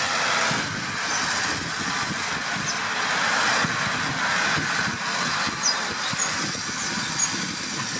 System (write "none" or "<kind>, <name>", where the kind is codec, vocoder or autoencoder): none